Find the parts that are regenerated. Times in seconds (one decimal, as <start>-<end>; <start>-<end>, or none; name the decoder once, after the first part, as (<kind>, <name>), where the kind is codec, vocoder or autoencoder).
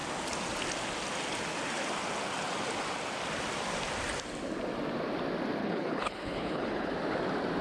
5.6-6.9 (codec, HILCodec)